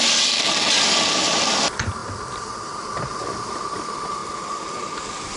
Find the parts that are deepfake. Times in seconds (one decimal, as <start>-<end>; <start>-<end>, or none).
2.0-3.6